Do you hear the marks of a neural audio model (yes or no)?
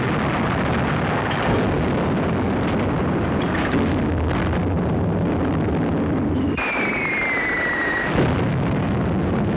no